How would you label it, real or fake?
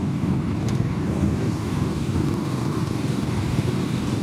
fake